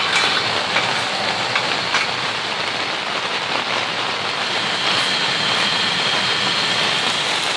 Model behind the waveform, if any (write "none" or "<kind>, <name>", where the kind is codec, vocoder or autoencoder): none